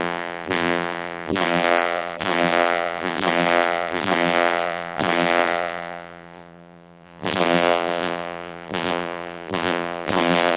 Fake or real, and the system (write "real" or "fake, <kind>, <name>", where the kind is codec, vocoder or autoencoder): fake, vocoder, BigVGAN v2